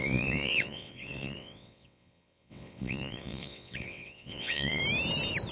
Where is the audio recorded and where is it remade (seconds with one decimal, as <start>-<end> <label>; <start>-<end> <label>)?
0.0-4.8 remade; 4.8-5.5 recorded